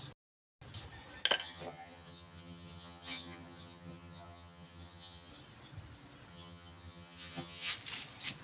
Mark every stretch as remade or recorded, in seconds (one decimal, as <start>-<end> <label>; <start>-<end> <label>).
0.0-1.4 recorded; 1.4-5.3 remade; 5.3-6.3 recorded; 6.3-7.7 remade; 7.7-8.4 recorded